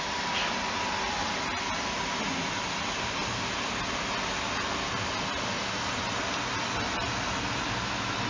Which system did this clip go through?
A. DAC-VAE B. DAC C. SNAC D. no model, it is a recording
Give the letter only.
D